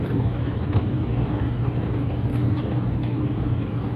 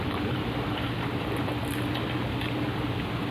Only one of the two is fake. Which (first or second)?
first